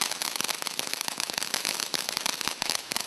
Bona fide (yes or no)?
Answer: no